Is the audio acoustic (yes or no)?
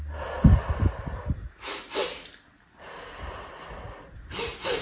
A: yes